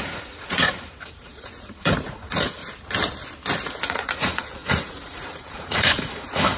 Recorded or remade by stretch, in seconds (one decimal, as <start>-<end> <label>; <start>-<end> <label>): 0.0-2.6 remade; 2.6-3.7 recorded; 3.7-6.6 remade